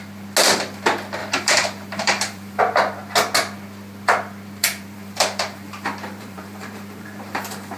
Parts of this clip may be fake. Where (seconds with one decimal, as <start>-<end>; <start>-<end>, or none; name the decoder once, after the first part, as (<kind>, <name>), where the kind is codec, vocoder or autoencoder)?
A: 1.2-2.6 (vocoder, BigVGAN v2); 4.6-7.8